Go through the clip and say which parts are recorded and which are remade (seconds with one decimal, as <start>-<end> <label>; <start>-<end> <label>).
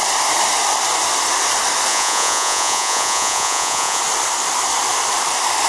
0.0-1.9 recorded; 1.9-4.0 remade; 4.0-5.7 recorded